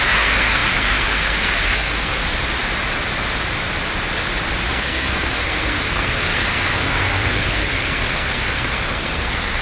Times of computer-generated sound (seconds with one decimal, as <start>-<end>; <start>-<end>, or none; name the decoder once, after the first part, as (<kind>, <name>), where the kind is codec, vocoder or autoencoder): 0.0-2.2 (codec, SNAC); 4.7-9.6